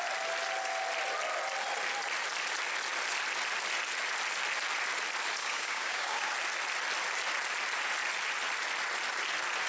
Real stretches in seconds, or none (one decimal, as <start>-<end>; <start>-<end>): 0.0-5.4; 6.3-9.7